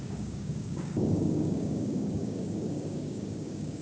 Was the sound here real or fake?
fake